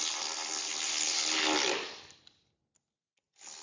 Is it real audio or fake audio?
real